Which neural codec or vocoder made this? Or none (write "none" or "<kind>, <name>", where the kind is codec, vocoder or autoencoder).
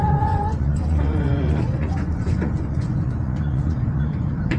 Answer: vocoder, Vocos